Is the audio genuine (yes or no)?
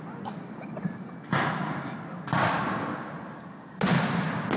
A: yes